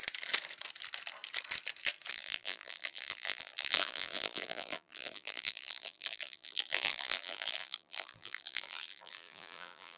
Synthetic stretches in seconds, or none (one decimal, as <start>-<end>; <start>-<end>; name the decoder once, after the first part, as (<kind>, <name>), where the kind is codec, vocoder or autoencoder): 2.1-10.0 (vocoder, BigVGAN v2)

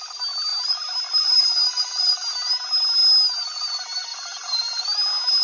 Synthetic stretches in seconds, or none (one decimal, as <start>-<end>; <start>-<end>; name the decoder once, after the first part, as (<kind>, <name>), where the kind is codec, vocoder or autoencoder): 0.5-2.1 (vocoder, BigVGAN v2); 4.1-4.8